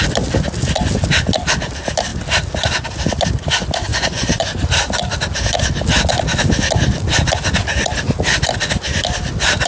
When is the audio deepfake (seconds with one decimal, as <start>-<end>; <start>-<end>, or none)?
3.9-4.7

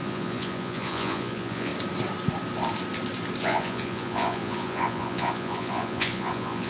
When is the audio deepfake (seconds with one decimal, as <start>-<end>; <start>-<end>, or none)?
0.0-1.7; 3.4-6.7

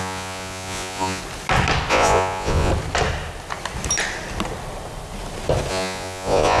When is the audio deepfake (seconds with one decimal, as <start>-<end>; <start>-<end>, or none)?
0.0-1.2; 1.9-2.7; 5.7-6.6

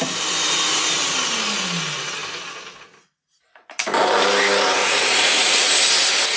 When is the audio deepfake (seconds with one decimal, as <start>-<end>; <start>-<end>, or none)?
4.8-5.7